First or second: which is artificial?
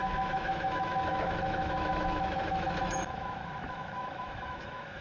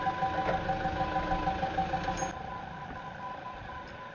first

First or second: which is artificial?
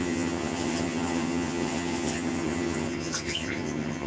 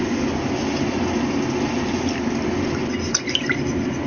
first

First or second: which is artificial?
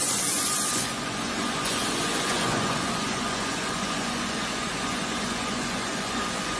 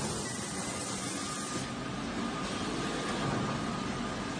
first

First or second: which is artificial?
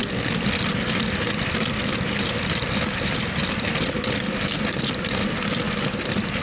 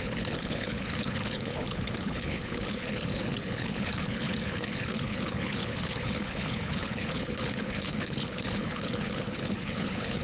second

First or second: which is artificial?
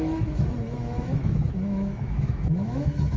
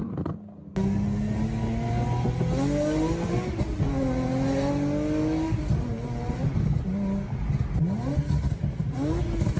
first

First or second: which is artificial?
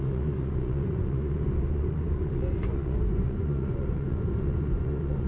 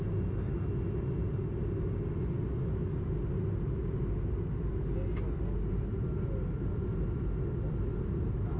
first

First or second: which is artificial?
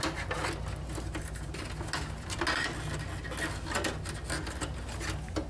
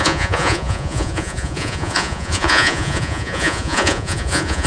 second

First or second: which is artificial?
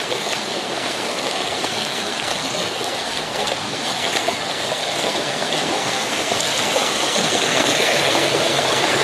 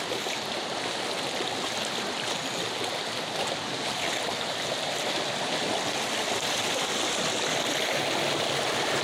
first